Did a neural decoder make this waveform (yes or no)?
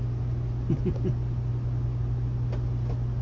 no